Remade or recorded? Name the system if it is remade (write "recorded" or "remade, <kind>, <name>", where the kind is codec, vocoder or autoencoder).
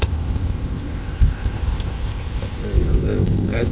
remade, codec, ZipCodec